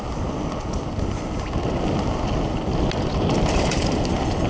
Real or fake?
real